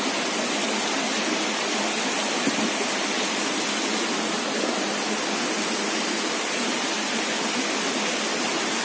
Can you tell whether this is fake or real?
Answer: real